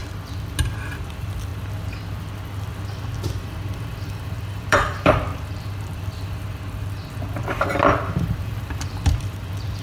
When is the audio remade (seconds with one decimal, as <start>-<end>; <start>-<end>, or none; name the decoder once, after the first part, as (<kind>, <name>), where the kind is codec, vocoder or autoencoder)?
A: 0.7-1.5 (vocoder, BigVGAN v2); 3.4-9.8